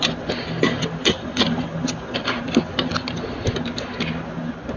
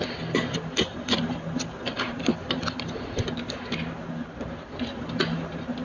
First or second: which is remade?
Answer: second